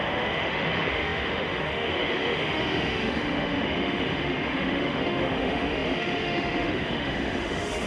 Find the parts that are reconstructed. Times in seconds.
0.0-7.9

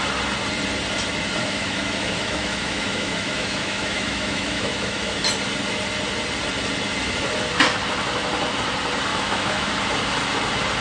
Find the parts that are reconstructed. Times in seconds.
1.4-5.2; 9.1-9.7

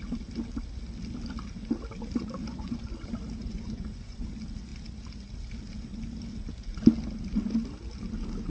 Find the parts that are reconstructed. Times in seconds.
2.4-2.9; 3.4-4.3

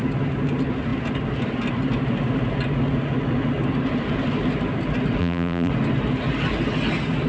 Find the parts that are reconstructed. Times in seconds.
5.2-5.7

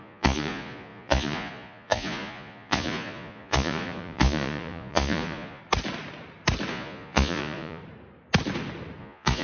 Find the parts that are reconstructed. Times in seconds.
0.0-5.6; 6.7-7.8; 9.0-9.4

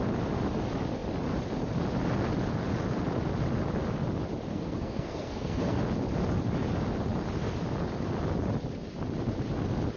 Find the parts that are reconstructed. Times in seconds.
4.5-5.8

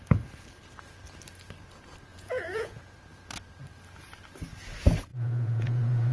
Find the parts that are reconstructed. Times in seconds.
2.1-2.8; 5.1-6.1

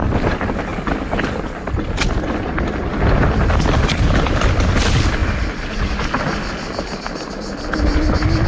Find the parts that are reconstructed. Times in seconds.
none